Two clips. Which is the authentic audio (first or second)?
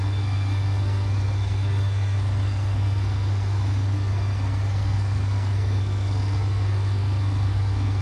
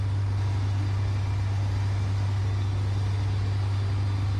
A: second